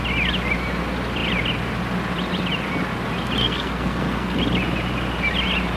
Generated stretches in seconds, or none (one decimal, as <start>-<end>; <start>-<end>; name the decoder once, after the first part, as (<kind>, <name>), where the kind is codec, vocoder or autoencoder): 3.4-4.4 (codec, SNAC)

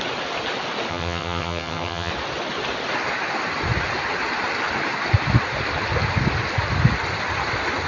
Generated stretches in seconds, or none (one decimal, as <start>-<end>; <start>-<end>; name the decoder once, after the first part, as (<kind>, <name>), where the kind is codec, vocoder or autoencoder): 0.9-2.1 (vocoder, HiFi-GAN)

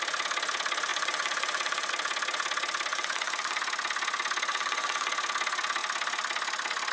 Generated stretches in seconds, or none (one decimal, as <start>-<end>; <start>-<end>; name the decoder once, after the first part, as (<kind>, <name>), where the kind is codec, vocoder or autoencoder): 0.9-1.9 (vocoder, Vocos); 2.9-3.6; 4.5-5.1

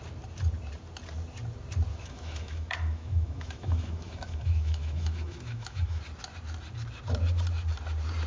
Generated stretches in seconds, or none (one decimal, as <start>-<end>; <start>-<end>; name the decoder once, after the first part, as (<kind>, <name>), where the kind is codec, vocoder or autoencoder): 1.9-6.0 (autoencoder, DAC-VAE)

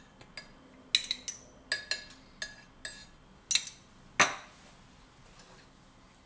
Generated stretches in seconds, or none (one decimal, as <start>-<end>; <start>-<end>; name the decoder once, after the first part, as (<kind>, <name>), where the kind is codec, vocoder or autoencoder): none

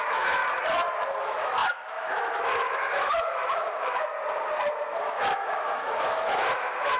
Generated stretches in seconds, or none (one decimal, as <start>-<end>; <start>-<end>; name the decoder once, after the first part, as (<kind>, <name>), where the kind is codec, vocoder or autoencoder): 0.0-0.4 (autoencoder, DAC-VAE); 1.2-4.1; 5.0-7.0